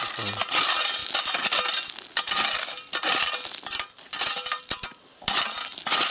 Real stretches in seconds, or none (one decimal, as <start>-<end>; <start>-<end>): 0.0-6.1